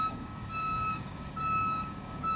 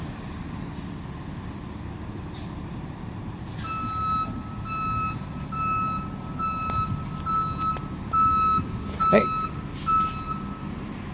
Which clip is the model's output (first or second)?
first